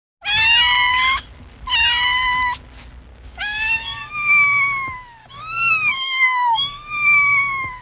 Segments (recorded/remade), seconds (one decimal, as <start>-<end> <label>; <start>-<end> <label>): 0.0-3.1 recorded; 3.1-4.1 remade; 4.1-5.2 recorded; 5.2-7.8 remade